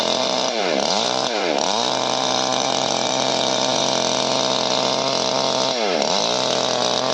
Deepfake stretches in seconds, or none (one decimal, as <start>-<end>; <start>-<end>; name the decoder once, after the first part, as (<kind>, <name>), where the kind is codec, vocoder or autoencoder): 0.0-3.8 (vocoder, BigVGAN v2)